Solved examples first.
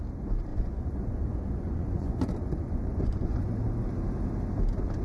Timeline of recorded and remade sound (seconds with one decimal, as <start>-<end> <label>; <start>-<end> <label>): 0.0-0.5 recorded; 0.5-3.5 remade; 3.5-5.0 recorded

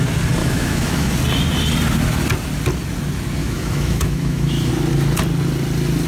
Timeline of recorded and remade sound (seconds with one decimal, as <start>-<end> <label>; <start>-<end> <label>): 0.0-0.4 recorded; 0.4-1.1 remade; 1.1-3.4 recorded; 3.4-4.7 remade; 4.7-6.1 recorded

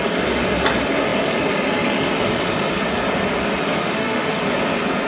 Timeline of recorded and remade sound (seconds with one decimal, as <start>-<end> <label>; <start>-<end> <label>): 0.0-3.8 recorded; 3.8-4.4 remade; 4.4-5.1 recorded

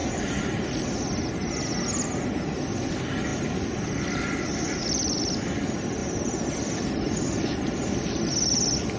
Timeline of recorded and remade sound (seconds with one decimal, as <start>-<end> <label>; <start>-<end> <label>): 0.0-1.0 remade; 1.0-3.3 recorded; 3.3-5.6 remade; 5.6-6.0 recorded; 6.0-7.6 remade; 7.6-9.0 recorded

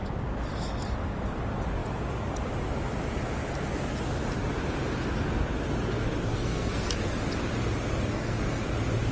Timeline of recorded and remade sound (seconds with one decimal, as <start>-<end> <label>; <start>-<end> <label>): 0.0-6.3 recorded; 6.3-6.9 remade; 6.9-8.1 recorded; 8.1-8.6 remade; 8.6-9.1 recorded

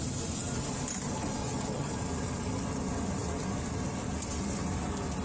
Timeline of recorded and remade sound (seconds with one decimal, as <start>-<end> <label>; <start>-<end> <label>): 0.0-1.4 recorded; 1.4-1.9 remade; 1.9-5.2 recorded

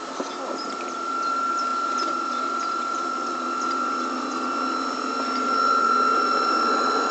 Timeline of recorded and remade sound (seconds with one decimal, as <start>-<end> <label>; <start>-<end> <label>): 0.0-7.1 recorded

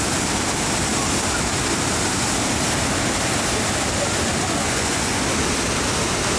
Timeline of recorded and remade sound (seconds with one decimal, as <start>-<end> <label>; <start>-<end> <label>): 0.0-4.6 recorded; 4.6-5.2 remade; 5.2-6.4 recorded